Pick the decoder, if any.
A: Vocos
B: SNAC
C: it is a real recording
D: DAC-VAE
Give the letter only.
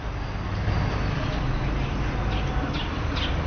C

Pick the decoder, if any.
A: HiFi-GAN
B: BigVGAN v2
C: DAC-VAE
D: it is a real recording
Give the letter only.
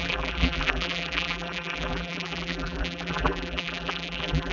B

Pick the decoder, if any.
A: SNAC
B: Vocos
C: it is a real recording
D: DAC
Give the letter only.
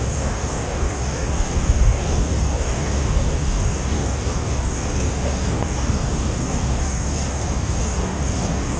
D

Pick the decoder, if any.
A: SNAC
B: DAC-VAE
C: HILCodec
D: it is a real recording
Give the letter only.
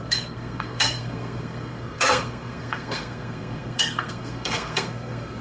A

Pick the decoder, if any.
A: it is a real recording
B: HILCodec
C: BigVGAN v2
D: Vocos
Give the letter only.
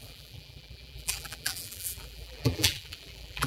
C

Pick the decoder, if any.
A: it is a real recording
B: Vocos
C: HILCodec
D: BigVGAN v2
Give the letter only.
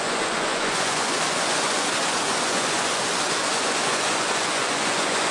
B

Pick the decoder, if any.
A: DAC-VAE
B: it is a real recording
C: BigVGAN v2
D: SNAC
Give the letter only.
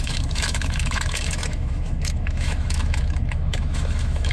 A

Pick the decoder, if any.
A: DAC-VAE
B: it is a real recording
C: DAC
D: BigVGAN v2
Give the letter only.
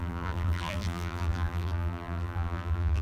D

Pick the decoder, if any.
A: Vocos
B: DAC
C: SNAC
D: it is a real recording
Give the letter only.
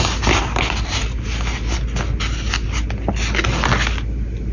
D